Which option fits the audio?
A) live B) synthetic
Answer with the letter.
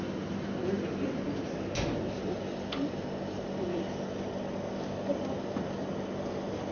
A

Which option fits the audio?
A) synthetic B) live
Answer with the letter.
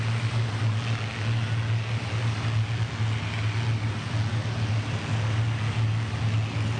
B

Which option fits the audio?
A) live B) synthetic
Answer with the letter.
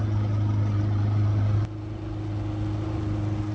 A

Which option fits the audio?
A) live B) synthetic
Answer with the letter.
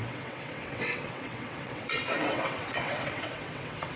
B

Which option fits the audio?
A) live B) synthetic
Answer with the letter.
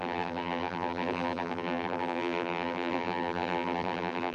B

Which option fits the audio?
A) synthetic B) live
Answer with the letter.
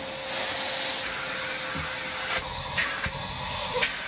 B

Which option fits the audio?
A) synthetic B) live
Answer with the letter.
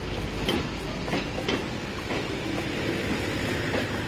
B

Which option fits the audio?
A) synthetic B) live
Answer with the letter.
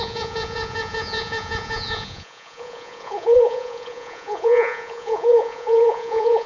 A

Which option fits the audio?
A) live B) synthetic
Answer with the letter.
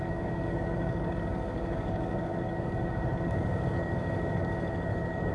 B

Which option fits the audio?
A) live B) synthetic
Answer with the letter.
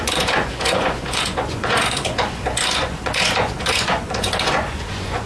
B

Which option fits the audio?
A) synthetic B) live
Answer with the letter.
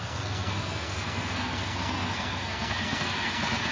A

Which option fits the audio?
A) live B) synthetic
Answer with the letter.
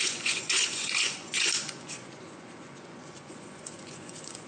B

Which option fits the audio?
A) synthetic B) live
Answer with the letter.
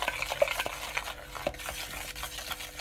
B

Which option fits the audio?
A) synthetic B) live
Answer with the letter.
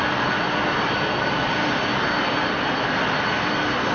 B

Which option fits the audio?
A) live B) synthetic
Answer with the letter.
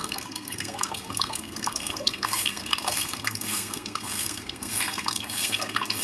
B